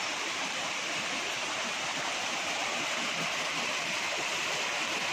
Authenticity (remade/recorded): remade